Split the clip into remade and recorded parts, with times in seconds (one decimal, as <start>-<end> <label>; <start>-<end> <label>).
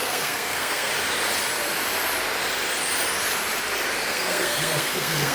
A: 0.0-0.9 remade; 0.9-4.1 recorded; 4.1-5.3 remade